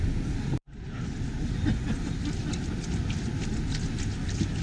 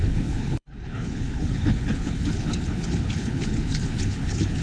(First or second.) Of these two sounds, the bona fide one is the first